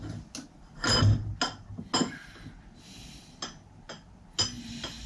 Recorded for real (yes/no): yes